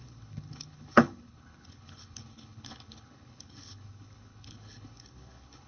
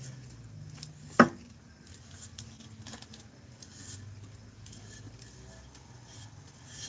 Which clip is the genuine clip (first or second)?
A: second